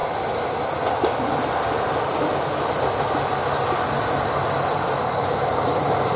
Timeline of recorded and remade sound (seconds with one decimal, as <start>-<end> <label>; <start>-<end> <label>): 0.0-6.2 recorded